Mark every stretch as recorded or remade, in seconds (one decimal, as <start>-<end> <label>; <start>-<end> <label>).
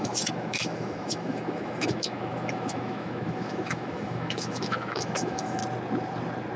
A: 0.0-5.6 remade; 5.6-6.6 recorded